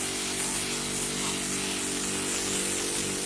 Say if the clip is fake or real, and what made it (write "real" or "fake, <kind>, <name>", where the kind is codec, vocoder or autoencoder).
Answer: real